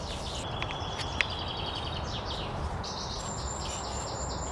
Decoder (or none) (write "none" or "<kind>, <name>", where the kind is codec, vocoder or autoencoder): none